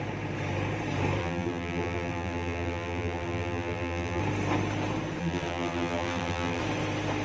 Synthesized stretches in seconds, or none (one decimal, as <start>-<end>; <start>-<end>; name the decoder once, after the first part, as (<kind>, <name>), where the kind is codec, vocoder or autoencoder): 1.2-4.2 (vocoder, BigVGAN v2); 5.2-6.6